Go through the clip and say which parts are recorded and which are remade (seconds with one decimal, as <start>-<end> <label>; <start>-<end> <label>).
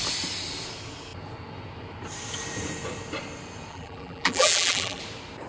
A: 0.0-3.7 recorded; 3.7-5.0 remade; 5.0-5.5 recorded